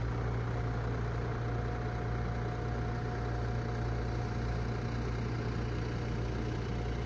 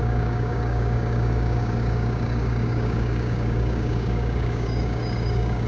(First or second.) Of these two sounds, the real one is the first